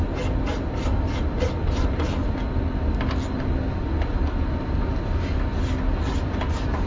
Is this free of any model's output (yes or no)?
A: yes